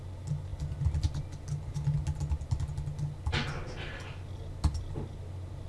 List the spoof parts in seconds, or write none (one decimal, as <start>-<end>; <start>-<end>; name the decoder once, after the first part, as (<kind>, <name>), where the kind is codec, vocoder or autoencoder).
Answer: none